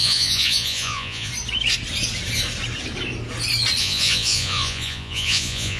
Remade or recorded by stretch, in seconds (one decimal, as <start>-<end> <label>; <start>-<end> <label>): 0.0-1.3 remade; 1.3-3.8 recorded; 3.8-5.8 remade